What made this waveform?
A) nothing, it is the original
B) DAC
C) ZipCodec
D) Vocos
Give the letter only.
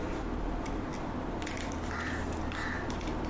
A